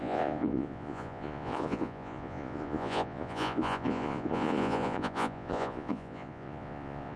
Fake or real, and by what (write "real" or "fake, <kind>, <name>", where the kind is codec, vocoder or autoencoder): fake, vocoder, Vocos